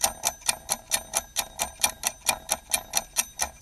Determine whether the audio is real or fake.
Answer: real